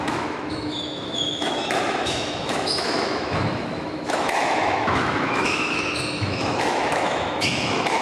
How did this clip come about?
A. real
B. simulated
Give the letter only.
B